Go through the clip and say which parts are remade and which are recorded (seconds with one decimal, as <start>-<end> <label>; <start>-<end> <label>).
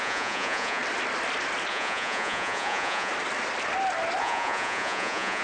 0.0-0.8 remade; 0.8-1.7 recorded; 1.7-3.1 remade; 3.1-4.2 recorded; 4.2-5.4 remade